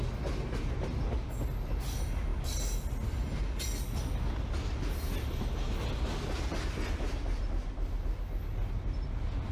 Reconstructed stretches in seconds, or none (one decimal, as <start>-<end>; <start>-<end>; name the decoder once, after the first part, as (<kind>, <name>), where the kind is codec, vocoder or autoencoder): none